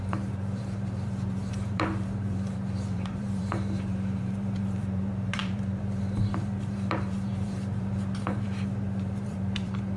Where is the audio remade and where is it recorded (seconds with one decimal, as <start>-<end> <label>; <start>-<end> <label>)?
0.0-10.0 remade